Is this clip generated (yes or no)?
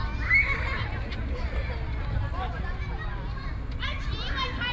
no